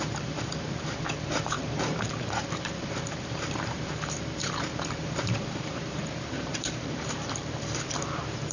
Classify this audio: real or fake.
fake